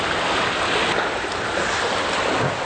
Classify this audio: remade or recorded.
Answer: recorded